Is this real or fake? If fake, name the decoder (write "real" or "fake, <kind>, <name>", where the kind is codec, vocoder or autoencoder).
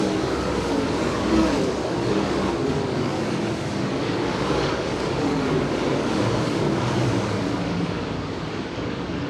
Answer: fake, codec, DAC